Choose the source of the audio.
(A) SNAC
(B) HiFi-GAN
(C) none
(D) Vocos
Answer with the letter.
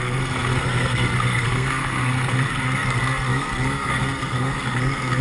A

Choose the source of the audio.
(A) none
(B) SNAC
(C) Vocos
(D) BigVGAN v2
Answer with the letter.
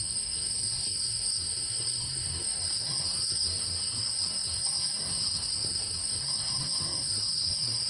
B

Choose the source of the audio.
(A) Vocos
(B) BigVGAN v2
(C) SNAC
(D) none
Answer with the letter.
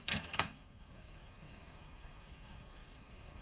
C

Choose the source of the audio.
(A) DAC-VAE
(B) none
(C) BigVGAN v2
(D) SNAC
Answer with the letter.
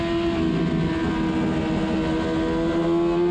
B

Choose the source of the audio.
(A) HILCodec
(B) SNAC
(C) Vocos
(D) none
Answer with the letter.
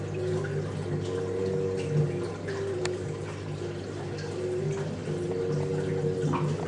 D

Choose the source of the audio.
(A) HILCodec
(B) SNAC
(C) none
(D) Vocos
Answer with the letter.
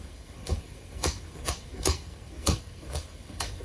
B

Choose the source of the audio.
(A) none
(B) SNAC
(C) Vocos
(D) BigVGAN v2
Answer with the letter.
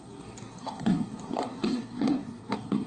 B